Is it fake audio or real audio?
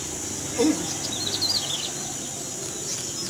real